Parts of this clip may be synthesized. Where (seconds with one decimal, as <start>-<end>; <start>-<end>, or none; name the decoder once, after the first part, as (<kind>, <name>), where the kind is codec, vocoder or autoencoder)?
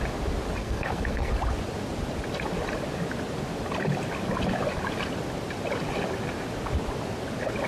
0.6-1.3 (codec, SNAC)